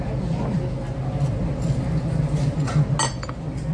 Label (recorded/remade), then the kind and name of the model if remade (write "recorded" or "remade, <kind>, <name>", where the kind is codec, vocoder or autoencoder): recorded